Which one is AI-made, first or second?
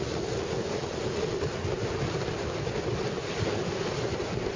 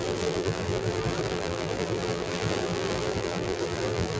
second